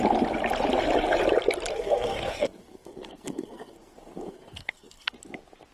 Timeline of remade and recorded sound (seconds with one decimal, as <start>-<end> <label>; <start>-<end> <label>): 0.0-1.7 recorded; 1.7-5.1 remade; 5.1-5.7 recorded